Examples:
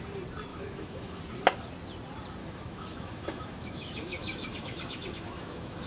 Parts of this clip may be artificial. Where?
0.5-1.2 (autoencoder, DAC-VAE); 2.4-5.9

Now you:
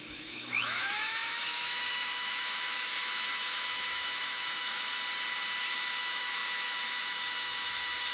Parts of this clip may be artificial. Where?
0.0-4.9 (autoencoder, DAC-VAE); 5.6-8.1

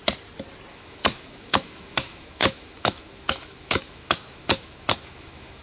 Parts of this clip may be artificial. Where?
0.7-5.6 (autoencoder, DAC-VAE)

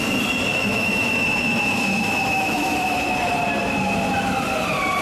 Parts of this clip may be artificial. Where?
0.5-3.3 (autoencoder, DAC-VAE)

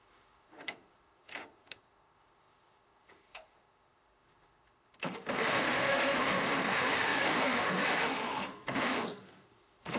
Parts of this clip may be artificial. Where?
0.0-10.0 (autoencoder, DAC-VAE)

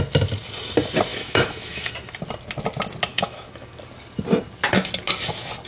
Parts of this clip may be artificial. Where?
1.1-1.9 (autoencoder, DAC-VAE); 3.1-3.8

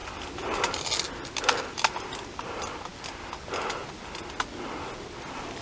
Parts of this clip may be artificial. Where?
none